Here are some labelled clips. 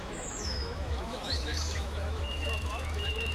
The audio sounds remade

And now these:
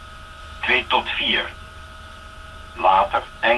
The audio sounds remade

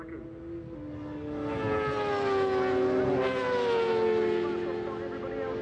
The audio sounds recorded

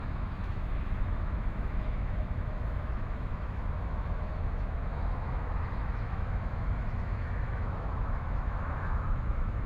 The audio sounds remade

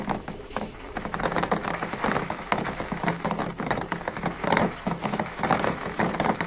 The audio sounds remade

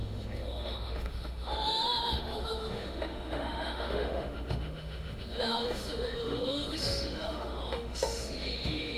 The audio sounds remade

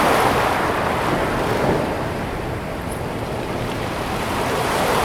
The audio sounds recorded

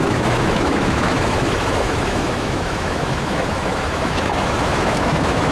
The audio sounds remade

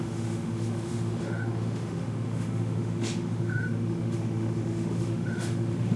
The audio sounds remade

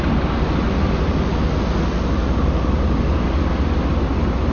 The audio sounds recorded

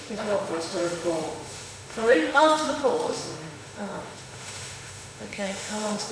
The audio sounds remade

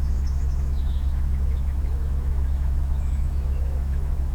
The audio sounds remade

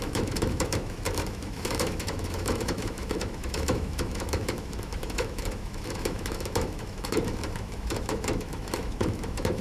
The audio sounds remade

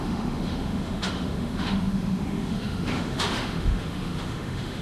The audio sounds remade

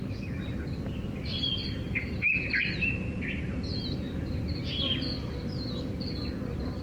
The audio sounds recorded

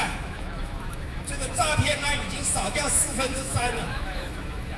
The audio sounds remade